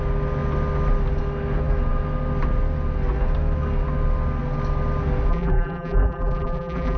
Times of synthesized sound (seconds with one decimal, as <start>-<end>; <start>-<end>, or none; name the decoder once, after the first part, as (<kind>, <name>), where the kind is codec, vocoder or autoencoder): 5.3-7.0 (vocoder, BigVGAN v2)